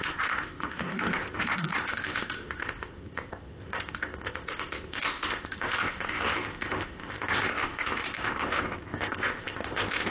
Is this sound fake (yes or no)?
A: yes